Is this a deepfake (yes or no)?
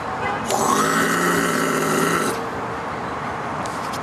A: no